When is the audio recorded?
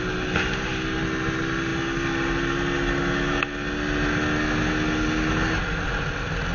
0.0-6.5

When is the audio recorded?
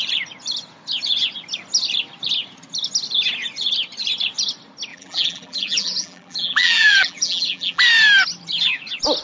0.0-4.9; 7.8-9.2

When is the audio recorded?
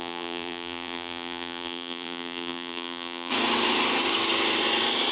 3.3-5.1